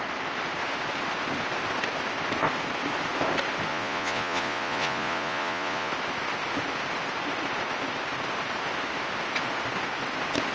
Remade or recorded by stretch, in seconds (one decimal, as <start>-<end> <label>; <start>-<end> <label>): 0.0-3.7 recorded; 3.7-5.9 remade; 5.9-10.5 recorded